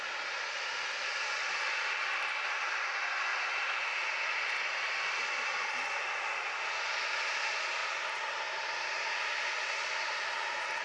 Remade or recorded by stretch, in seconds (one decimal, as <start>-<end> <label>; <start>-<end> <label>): 0.0-10.8 recorded